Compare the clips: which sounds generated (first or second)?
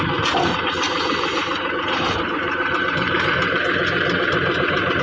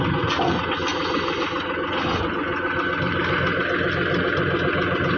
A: first